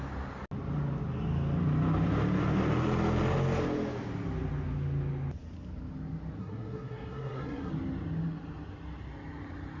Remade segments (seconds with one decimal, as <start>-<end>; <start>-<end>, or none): 6.4-7.7